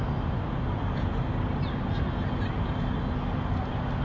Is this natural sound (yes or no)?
yes